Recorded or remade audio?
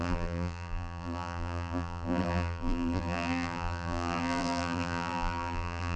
remade